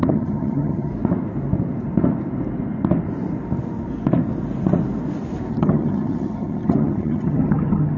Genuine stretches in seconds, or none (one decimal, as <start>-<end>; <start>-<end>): 0.9-5.5